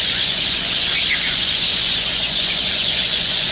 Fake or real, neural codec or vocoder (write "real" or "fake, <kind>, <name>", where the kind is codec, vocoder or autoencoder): fake, vocoder, Vocos